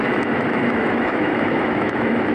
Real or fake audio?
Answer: fake